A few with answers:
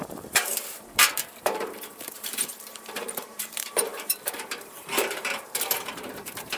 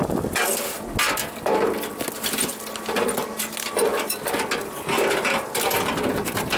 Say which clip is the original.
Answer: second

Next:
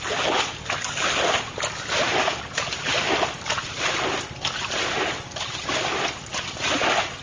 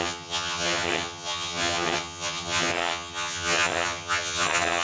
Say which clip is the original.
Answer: first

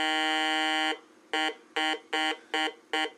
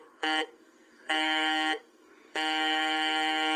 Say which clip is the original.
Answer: first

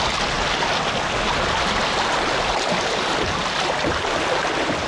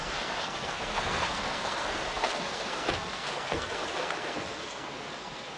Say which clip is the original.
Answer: first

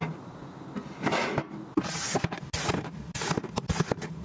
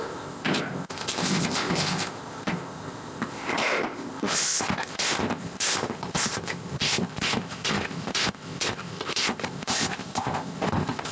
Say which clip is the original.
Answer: first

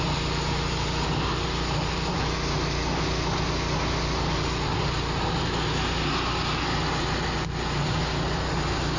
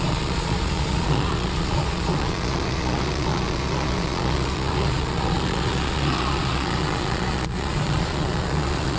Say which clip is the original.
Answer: first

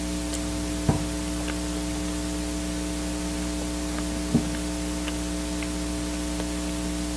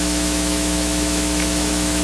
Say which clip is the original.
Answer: first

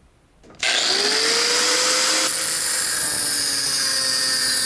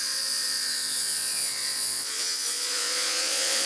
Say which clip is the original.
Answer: first